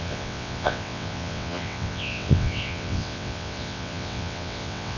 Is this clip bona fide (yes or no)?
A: no